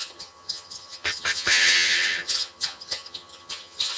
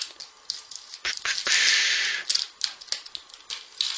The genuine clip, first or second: second